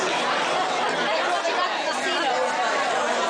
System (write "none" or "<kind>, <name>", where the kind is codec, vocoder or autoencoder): none